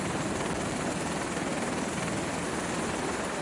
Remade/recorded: recorded